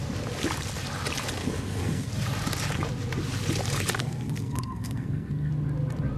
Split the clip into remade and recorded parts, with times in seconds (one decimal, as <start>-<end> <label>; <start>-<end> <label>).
0.0-1.4 recorded; 1.4-2.1 remade; 2.1-4.0 recorded; 4.0-5.5 remade; 5.5-6.2 recorded